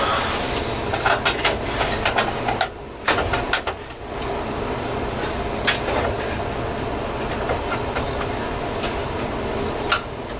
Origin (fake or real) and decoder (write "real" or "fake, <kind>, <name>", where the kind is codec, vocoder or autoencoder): real